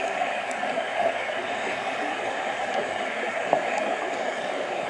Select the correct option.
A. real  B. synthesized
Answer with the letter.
B